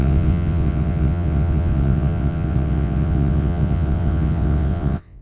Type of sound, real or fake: fake